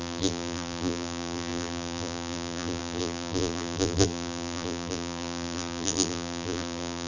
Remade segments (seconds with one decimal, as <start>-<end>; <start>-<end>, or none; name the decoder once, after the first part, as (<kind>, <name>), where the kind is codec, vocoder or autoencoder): 0.0-7.1 (vocoder, BigVGAN v2)